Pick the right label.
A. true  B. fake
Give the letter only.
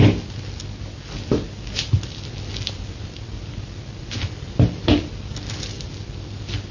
A